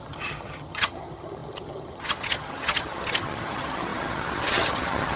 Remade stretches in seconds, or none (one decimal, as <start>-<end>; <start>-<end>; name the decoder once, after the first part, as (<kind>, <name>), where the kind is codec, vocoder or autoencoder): 0.0-5.2 (vocoder, HiFi-GAN)